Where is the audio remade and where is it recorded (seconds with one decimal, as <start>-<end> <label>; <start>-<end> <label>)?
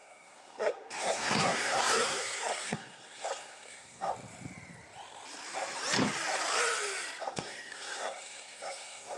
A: 0.0-4.1 remade; 4.1-7.2 recorded; 7.2-9.2 remade